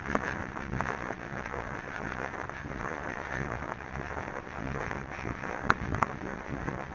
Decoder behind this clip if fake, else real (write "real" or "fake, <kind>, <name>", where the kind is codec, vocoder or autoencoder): fake, vocoder, WaveNeXt